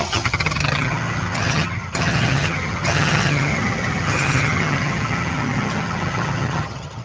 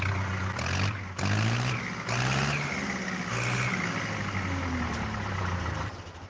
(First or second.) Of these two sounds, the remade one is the first